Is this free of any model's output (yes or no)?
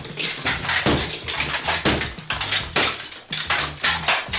yes